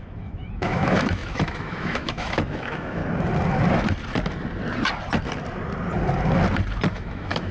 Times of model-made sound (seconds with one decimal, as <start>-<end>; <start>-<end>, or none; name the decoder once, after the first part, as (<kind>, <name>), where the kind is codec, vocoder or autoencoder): 0.0-3.0 (autoencoder, DAC-VAE); 6.9-7.5